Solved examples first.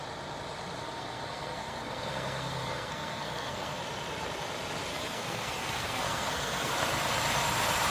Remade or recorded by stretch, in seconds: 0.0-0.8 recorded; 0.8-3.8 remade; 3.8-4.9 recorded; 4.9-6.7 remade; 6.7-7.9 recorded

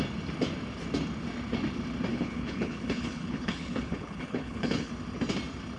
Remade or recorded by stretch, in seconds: 0.0-2.1 recorded; 2.1-4.9 remade; 4.9-5.8 recorded

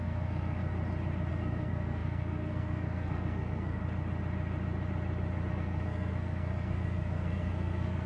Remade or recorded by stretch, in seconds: 0.0-0.7 remade; 0.7-1.3 recorded; 1.3-3.8 remade; 3.8-5.5 recorded; 5.5-8.1 remade